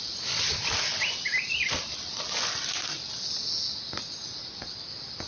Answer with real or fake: real